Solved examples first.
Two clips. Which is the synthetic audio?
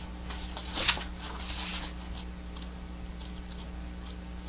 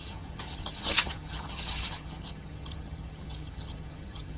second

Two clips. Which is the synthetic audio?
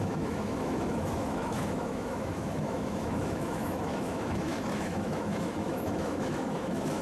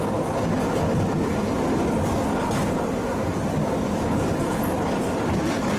first